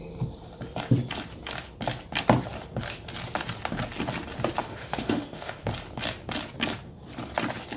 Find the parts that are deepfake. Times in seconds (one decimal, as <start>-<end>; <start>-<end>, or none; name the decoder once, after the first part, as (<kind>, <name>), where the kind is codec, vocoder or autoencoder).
4.6-5.6 (autoencoder, DAC-VAE)

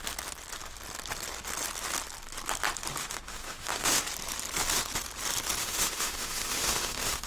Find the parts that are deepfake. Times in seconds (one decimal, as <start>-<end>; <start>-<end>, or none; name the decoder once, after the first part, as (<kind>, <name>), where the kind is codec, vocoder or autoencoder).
3.0-4.0 (autoencoder, DAC-VAE); 5.6-7.3